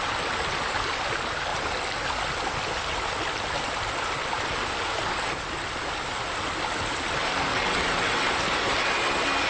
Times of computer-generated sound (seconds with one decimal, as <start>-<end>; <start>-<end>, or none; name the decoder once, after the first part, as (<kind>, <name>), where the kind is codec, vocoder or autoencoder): 7.5-8.3 (vocoder, WaveNeXt)